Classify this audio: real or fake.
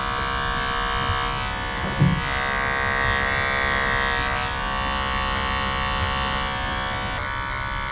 real